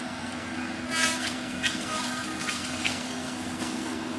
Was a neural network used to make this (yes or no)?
yes